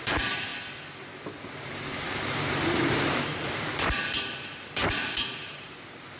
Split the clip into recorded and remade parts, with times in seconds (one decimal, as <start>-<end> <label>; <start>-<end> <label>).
0.0-0.5 remade; 0.5-1.5 recorded; 1.5-6.2 remade